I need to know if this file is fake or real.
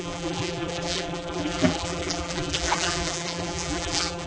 fake